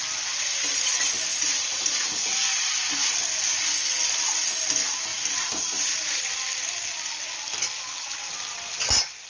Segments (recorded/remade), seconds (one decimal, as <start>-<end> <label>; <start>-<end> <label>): 0.0-9.3 recorded